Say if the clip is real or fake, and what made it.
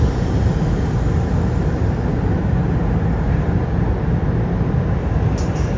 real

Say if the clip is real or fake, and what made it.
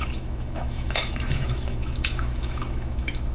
fake, autoencoder, DAC-VAE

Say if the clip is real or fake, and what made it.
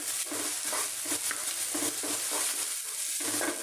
real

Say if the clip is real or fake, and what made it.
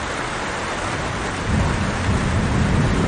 real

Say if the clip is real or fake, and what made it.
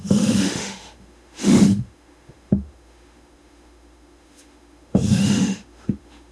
fake, autoencoder, DAC-VAE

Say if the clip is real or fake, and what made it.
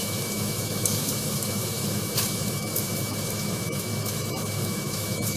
fake, autoencoder, DAC-VAE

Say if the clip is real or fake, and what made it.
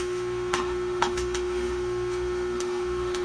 fake, autoencoder, DAC-VAE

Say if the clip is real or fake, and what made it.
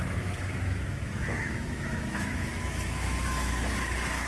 fake, autoencoder, DAC-VAE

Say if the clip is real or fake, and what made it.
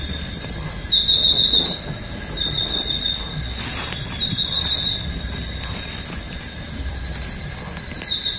real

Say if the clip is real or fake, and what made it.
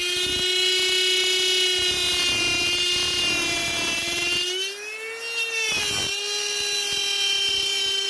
real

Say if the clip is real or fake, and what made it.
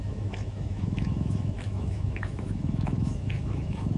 fake, autoencoder, DAC-VAE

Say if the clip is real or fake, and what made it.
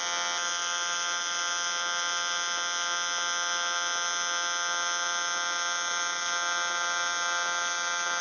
real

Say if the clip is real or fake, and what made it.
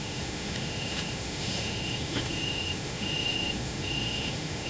fake, autoencoder, DAC-VAE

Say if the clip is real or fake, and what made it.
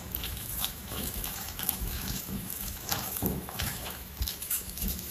fake, autoencoder, DAC-VAE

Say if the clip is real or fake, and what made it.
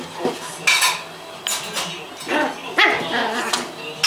real